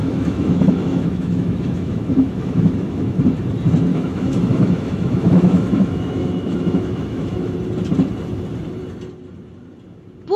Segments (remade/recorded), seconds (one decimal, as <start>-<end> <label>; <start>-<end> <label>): 0.0-3.2 remade; 3.2-3.9 recorded; 3.9-7.5 remade; 7.5-10.4 recorded